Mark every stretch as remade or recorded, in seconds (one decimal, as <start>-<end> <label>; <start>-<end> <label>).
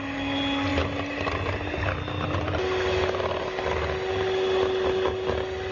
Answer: 0.0-5.7 recorded